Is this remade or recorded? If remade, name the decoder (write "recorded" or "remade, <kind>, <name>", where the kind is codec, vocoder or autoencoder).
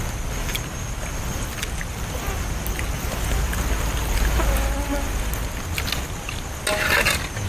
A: recorded